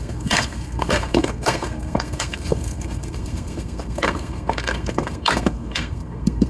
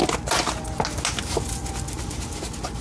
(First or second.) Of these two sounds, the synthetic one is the first